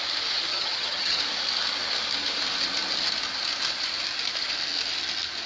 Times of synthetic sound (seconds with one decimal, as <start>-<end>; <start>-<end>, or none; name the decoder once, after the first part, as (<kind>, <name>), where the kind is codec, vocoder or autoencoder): 0.5-1.2 (vocoder, HiFi-GAN)